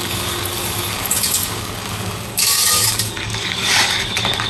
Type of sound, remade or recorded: remade